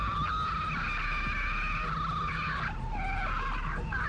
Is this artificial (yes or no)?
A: no